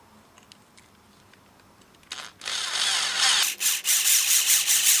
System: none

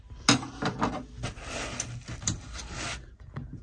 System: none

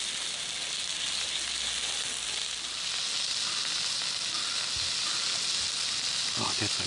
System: none